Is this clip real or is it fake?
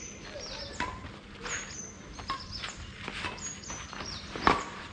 real